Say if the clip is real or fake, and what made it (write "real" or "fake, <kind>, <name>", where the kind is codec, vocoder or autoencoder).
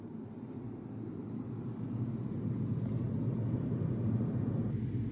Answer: real